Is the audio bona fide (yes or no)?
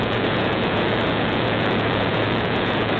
no